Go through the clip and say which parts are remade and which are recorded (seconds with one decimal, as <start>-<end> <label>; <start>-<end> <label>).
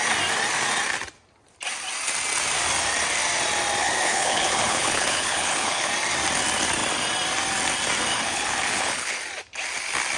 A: 0.0-3.8 recorded; 3.8-5.9 remade; 5.9-8.1 recorded; 8.1-9.2 remade; 9.2-10.2 recorded